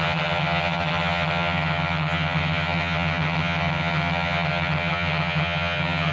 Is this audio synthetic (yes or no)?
yes